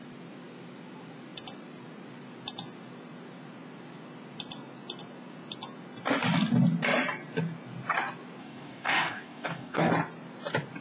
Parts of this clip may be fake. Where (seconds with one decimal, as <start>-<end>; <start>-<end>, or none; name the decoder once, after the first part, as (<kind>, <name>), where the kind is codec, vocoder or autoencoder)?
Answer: 8.4-9.9 (codec, DAC)